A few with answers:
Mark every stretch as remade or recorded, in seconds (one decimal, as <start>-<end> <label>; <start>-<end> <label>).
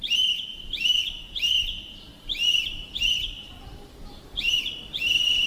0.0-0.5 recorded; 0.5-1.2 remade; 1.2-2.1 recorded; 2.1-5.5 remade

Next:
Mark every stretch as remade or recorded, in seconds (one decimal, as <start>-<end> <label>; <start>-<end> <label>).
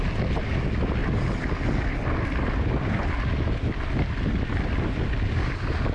0.0-5.9 recorded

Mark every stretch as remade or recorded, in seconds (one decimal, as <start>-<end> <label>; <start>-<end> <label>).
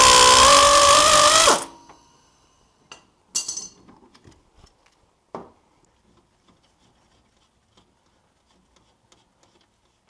0.0-0.6 recorded; 0.6-1.5 remade; 1.5-10.1 recorded